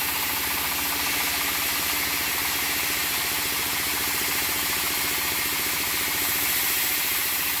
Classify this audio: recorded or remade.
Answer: remade